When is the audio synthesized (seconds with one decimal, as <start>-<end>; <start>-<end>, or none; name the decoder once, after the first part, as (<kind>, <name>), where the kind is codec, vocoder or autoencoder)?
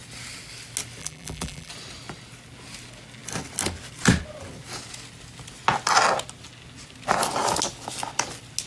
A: 1.0-1.7 (vocoder, BigVGAN v2)